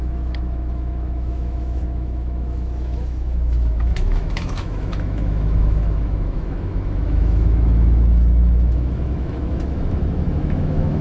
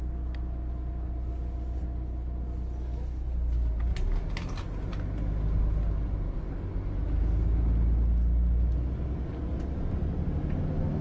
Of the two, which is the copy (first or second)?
first